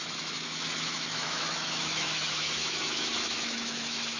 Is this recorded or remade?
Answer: remade